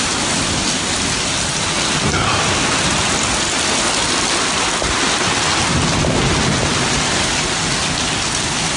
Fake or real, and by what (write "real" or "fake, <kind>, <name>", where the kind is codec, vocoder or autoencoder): real